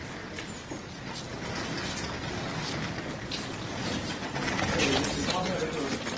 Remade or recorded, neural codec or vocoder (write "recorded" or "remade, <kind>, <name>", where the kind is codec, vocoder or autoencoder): recorded